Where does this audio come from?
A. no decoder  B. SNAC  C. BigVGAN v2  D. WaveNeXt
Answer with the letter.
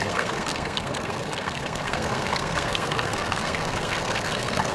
B